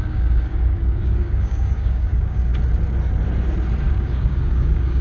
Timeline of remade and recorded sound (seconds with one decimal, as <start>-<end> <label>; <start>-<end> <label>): 0.0-2.5 remade; 2.5-3.9 recorded; 3.9-5.0 remade